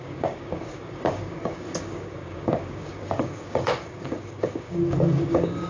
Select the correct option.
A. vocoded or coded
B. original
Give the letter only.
A